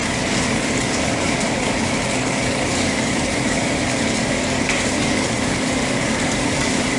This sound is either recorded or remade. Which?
remade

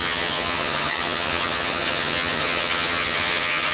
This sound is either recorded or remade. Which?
remade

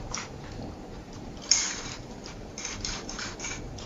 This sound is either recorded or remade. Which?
remade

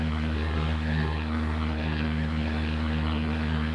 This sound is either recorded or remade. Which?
remade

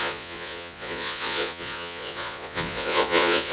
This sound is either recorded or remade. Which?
remade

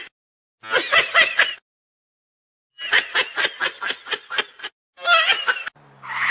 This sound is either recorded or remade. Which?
recorded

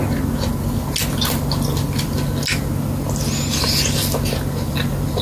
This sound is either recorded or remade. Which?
recorded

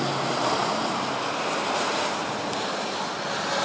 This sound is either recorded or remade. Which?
recorded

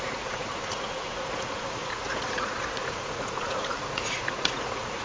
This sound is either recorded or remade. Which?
remade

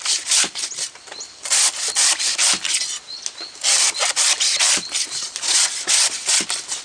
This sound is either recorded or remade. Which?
recorded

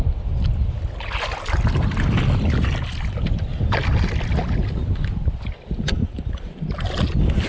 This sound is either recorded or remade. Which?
recorded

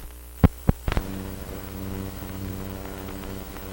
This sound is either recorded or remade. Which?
remade